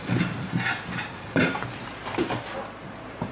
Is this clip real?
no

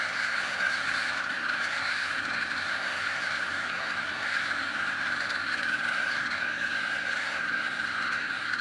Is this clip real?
no